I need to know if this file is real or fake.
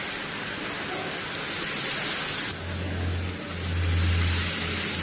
real